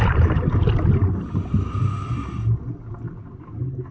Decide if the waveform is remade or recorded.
recorded